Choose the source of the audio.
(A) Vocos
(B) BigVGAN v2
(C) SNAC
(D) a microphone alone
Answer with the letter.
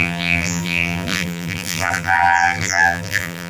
B